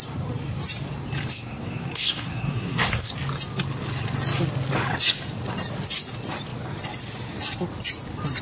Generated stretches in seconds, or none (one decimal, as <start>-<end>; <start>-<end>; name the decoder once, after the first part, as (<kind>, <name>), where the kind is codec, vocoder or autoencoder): 1.3-3.1 (codec, SNAC)

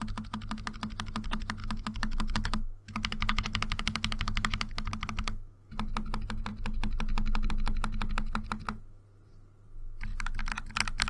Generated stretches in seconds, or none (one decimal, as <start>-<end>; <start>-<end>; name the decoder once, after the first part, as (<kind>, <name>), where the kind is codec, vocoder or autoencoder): 1.6-5.7 (autoencoder, DAC-VAE)

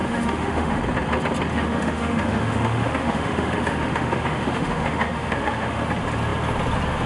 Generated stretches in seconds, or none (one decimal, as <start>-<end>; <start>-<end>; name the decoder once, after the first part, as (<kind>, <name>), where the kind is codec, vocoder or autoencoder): 0.0-0.8 (autoencoder, DAC-VAE); 1.5-5.8

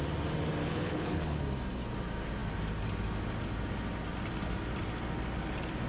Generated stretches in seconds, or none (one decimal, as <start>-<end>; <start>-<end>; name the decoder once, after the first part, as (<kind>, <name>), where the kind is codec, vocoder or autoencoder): 0.6-1.4 (codec, HILCodec)